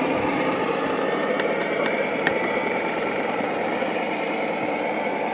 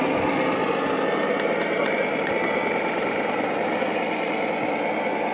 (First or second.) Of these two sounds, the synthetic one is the first